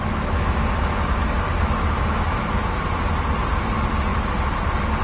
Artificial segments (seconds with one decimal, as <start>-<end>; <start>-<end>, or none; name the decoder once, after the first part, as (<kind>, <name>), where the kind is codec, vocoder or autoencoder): 0.0-3.0 (autoencoder, DAC-VAE)